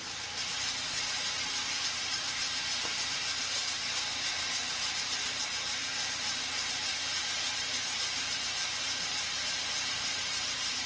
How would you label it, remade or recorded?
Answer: recorded